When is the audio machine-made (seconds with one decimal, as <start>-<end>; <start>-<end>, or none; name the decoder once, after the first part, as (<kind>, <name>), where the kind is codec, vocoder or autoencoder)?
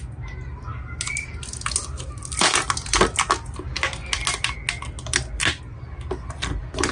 none